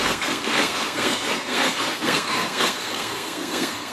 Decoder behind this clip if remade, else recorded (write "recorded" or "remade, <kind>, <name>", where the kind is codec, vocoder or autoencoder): remade, codec, SNAC